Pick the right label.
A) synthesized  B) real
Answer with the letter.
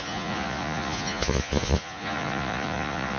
A